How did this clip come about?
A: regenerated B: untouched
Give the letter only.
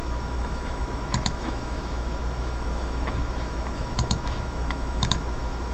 A